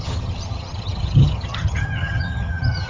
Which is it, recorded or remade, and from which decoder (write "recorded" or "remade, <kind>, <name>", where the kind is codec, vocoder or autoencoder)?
remade, vocoder, HiFi-GAN